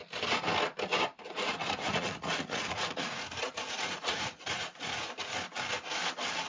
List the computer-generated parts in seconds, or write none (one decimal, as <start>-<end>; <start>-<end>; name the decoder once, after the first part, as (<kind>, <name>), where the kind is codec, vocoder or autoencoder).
1.2-5.1 (vocoder, Vocos)